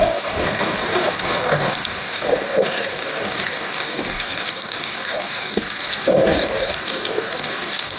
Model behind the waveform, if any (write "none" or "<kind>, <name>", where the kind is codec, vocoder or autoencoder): codec, DAC